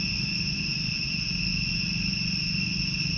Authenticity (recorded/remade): recorded